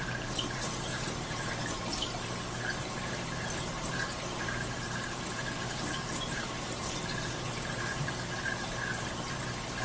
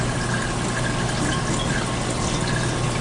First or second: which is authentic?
second